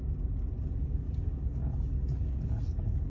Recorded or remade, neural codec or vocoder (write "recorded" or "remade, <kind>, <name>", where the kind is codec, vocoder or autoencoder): recorded